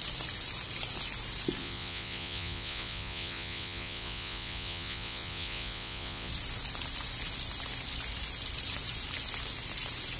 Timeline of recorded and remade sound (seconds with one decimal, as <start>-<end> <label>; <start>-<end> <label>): 0.0-1.6 recorded; 1.6-6.3 remade; 6.3-10.2 recorded